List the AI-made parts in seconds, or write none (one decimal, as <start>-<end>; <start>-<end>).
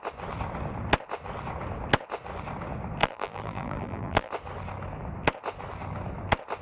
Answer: 3.0-4.3